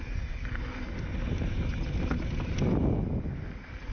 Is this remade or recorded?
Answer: recorded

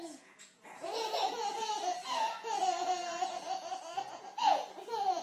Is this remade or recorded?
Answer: remade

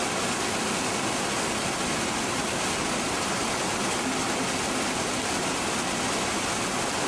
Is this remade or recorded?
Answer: recorded